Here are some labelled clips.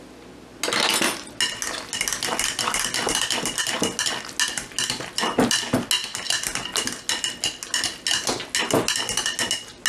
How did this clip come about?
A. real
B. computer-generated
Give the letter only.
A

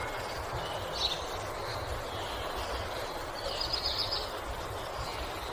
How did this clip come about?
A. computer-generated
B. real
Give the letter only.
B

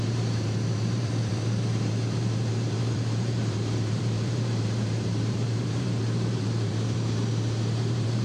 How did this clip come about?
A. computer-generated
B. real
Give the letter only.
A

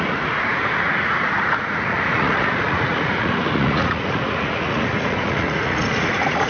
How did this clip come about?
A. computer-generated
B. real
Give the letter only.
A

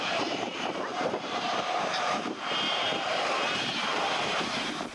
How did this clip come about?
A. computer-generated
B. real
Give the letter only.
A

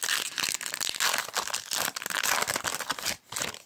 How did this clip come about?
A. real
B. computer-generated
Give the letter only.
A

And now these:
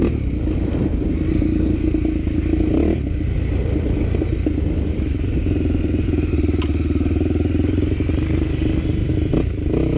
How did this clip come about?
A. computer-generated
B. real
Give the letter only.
B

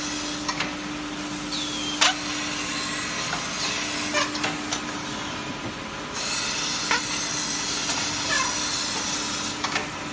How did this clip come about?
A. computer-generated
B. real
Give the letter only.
B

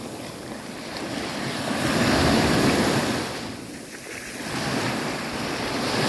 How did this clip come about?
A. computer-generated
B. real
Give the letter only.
B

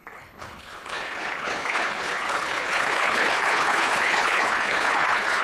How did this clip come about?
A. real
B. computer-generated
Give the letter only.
B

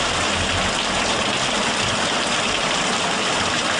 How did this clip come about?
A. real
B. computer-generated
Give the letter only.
A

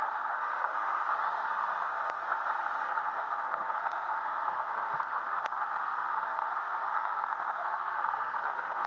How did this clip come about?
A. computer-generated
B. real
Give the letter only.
A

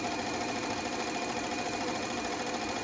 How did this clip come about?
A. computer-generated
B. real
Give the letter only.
A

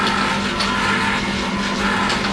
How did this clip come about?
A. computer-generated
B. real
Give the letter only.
B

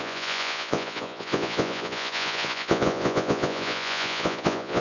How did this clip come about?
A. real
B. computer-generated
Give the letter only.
B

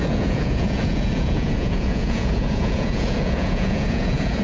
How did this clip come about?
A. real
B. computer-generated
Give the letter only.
B